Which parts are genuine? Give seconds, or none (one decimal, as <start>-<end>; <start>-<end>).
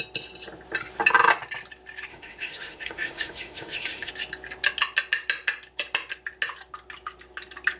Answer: 0.0-2.1; 4.1-7.8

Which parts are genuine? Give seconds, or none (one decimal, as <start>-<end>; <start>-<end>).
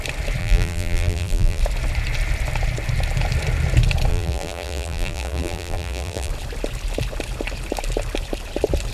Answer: 0.0-0.4; 1.6-4.1; 6.3-8.9